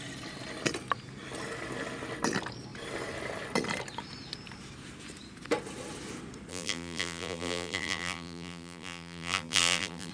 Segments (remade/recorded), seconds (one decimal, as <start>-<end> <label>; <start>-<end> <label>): 0.0-6.5 recorded; 6.5-10.1 remade